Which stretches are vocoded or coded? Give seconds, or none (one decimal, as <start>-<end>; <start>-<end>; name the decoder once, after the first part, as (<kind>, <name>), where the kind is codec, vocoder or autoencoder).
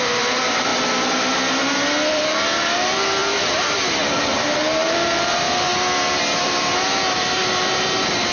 0.0-0.7 (vocoder, BigVGAN v2); 2.1-5.7; 6.4-8.3